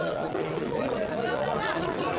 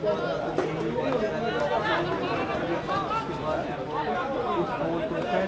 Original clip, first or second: second